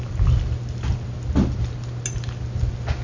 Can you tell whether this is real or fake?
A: real